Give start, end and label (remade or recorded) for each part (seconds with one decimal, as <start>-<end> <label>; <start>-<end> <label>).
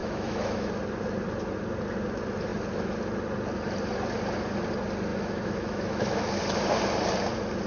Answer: 0.0-0.7 remade; 0.7-5.1 recorded; 5.1-6.4 remade; 6.4-7.7 recorded